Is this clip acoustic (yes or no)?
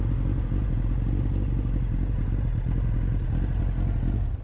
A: yes